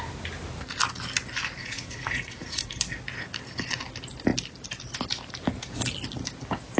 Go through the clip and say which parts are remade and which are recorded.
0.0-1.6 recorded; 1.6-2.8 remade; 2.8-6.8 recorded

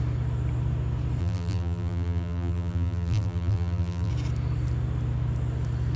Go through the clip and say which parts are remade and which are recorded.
0.0-1.2 recorded; 1.2-4.1 remade; 4.1-6.0 recorded

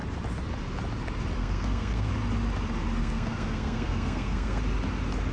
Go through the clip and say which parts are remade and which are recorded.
0.0-1.4 recorded; 1.4-2.1 remade; 2.1-3.0 recorded; 3.0-4.6 remade; 4.6-5.3 recorded

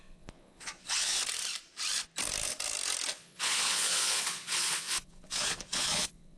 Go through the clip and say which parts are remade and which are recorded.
0.0-1.2 remade; 1.2-3.1 recorded; 3.1-6.4 remade

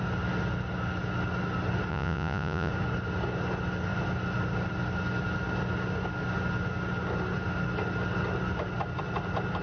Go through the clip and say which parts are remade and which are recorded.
0.0-1.9 recorded; 1.9-2.7 remade; 2.7-9.6 recorded

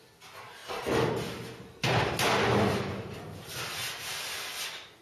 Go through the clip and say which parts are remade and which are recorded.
0.0-5.0 recorded

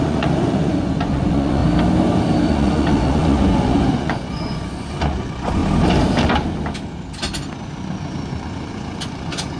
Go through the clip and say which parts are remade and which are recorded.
0.0-1.6 remade; 1.6-2.5 recorded; 2.5-5.6 remade; 5.6-7.6 recorded; 7.6-9.6 remade